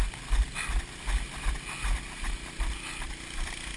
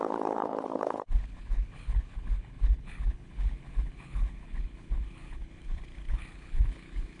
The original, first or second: first